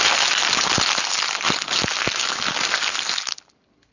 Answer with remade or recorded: recorded